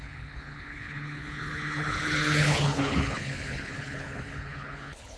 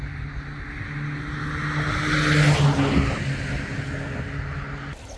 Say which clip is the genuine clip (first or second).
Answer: second